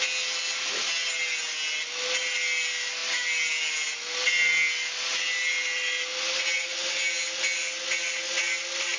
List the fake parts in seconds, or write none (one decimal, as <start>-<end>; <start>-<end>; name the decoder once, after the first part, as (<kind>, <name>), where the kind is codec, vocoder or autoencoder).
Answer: none